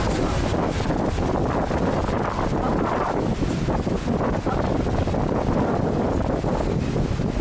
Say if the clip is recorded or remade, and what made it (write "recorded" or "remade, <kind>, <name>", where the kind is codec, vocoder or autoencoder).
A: recorded